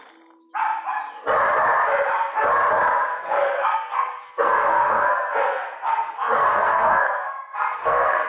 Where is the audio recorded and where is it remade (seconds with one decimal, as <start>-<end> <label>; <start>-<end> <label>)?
0.0-3.1 recorded; 3.1-8.3 remade